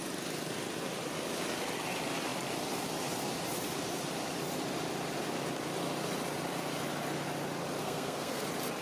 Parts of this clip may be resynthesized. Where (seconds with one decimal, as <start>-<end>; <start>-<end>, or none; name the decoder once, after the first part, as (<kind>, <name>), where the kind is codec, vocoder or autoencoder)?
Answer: 7.8-8.4 (codec, SNAC)